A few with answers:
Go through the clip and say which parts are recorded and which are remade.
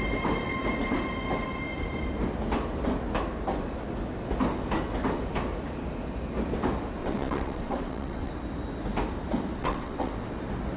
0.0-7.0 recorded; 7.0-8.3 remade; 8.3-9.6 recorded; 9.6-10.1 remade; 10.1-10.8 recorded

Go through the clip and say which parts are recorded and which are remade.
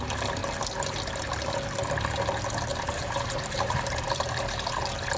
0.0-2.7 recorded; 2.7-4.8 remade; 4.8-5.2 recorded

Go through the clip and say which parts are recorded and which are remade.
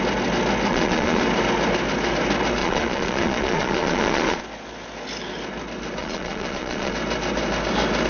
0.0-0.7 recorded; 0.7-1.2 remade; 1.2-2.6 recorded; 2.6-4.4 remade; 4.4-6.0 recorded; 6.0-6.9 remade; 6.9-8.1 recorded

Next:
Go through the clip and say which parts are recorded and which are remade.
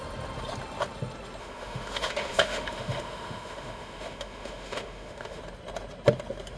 0.0-1.4 recorded; 1.4-5.4 remade; 5.4-6.6 recorded